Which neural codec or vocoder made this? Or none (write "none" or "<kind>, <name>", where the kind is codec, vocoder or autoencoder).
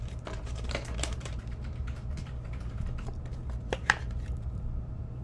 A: vocoder, BigVGAN v2